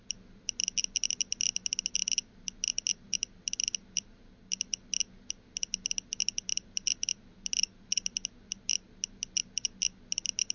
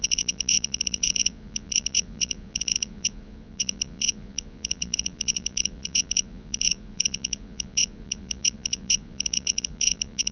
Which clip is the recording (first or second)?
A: first